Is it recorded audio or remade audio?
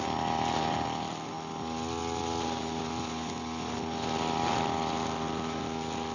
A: recorded